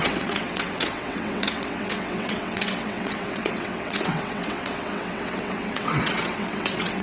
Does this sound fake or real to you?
fake